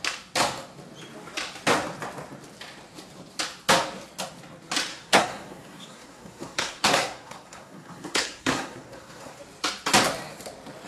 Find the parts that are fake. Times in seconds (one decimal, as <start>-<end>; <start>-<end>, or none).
4.9-9.4